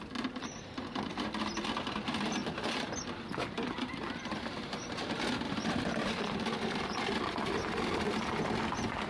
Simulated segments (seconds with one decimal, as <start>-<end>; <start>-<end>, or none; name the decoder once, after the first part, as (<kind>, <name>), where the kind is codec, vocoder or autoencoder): none